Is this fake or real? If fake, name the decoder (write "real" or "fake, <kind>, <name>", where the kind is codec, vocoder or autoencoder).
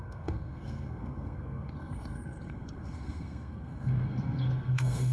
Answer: fake, codec, SNAC